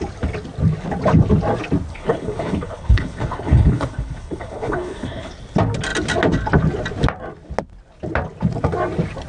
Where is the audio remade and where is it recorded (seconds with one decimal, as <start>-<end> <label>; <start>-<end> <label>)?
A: 0.0-1.9 recorded; 1.9-5.3 remade; 5.3-9.3 recorded